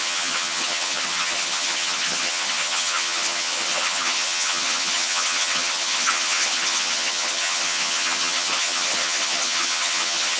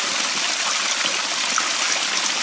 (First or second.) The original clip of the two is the second